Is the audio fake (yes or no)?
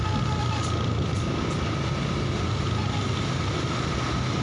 no